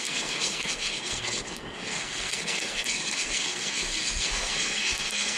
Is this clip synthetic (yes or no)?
yes